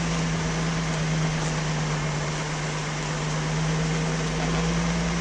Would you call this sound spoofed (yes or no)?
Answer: no